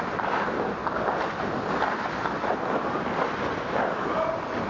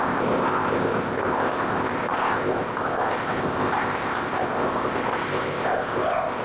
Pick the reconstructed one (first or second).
second